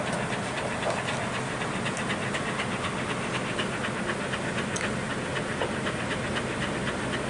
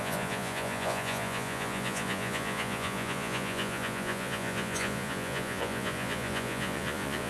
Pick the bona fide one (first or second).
first